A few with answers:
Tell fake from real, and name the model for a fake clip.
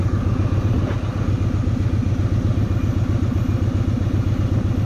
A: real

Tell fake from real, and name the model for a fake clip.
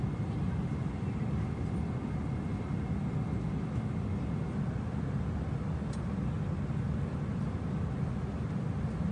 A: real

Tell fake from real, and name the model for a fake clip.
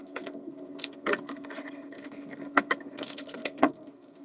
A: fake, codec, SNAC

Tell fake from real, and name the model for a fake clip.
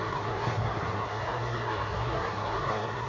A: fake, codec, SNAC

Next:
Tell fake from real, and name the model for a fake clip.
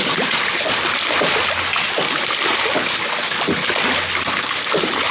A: real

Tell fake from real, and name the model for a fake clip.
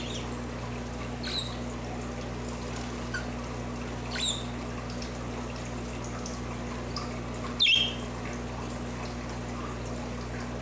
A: real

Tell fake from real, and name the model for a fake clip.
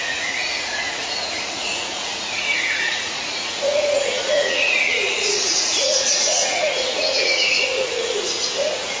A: fake, vocoder, Vocos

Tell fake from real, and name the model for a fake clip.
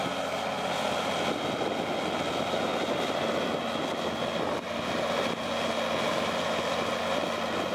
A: real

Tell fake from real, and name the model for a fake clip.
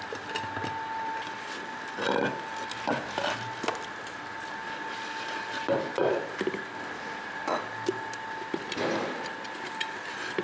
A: real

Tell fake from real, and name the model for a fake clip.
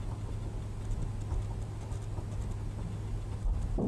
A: real